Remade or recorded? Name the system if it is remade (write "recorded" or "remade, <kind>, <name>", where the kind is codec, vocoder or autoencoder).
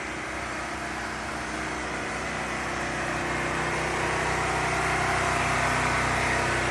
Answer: recorded